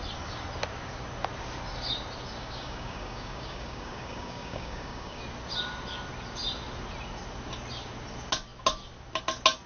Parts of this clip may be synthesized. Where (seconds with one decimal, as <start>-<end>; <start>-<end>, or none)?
2.4-5.2